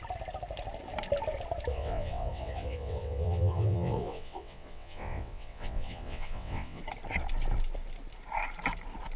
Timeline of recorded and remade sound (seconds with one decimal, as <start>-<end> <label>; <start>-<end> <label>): 0.0-1.7 recorded; 1.7-6.8 remade; 6.8-9.2 recorded